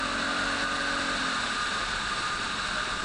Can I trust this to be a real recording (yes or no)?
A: yes